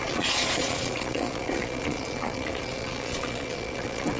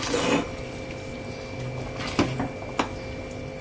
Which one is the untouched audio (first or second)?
second